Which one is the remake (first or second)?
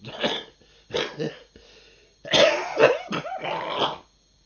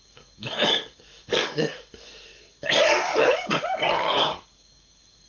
second